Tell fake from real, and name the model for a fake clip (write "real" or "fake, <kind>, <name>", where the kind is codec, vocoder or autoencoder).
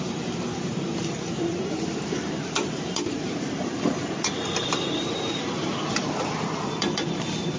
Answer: fake, vocoder, BigVGAN v2